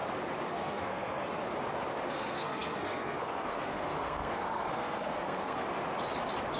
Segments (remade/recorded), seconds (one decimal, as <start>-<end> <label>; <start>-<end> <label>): 0.0-0.5 recorded; 0.5-1.4 remade; 1.4-2.1 recorded; 2.1-5.7 remade; 5.7-6.6 recorded